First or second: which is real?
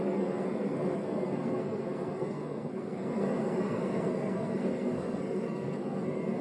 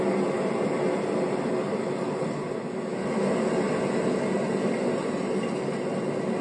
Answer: second